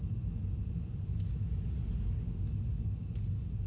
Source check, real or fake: real